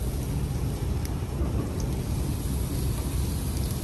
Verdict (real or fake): real